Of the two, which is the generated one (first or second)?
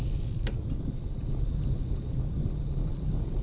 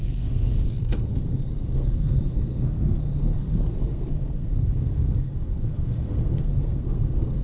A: second